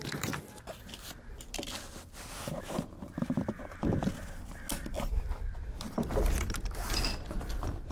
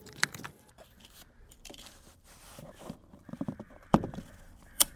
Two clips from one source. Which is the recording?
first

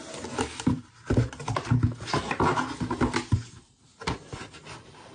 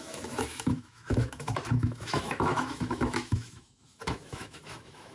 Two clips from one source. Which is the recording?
first